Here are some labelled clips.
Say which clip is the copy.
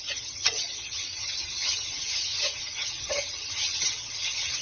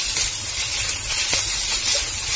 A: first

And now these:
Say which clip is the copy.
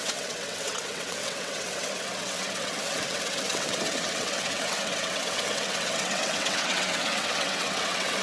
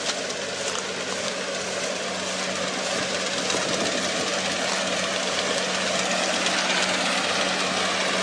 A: first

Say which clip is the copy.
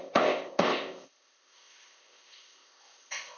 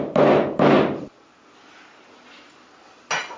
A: first